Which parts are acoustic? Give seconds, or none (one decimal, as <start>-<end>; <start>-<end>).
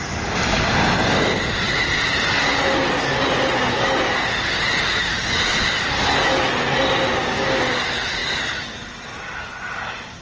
0.0-10.2